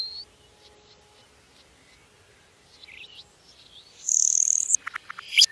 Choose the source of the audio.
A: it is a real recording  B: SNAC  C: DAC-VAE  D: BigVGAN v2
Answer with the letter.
A